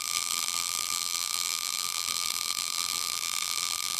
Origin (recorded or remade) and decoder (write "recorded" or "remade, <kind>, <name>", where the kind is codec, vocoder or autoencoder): remade, vocoder, BigVGAN v2